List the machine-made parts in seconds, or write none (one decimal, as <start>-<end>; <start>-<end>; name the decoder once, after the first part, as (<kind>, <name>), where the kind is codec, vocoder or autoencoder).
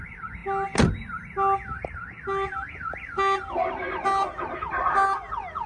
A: none